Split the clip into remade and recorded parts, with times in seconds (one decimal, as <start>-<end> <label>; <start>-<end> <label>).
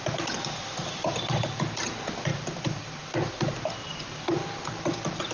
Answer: 0.0-1.6 remade; 1.6-2.3 recorded; 2.3-3.4 remade; 3.4-5.3 recorded